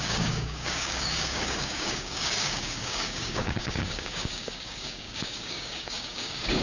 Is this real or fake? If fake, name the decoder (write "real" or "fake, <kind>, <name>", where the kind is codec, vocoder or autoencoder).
fake, codec, DAC